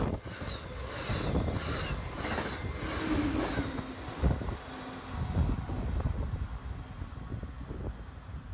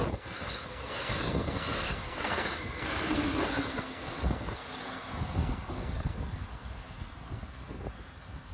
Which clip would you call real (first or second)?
first